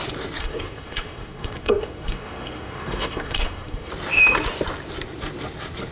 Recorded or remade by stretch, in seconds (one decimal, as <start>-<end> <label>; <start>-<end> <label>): 0.0-0.4 recorded; 0.4-3.9 remade; 3.9-5.9 recorded

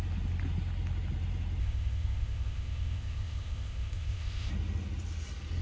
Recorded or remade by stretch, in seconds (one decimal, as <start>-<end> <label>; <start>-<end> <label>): 0.0-1.6 recorded; 1.6-4.5 remade; 4.5-5.6 recorded